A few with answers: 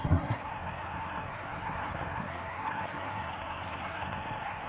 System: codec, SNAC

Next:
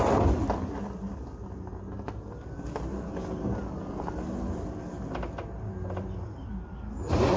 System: none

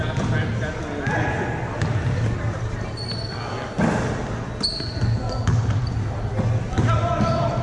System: none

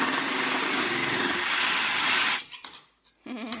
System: none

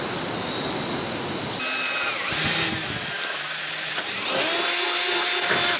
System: none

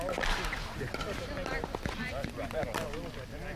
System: none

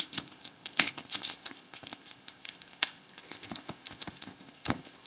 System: codec, ZipCodec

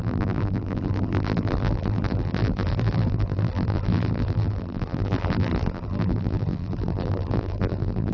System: vocoder, BigVGAN v2